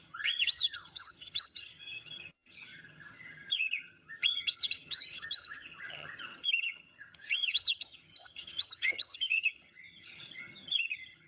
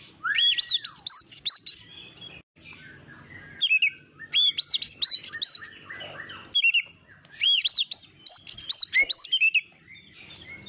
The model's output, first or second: first